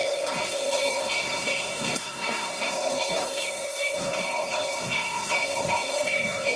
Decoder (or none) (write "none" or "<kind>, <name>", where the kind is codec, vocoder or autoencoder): codec, SNAC